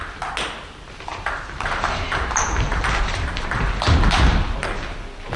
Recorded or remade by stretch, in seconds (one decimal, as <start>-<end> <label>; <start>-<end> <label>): 0.0-1.1 recorded; 1.1-4.3 remade; 4.3-5.4 recorded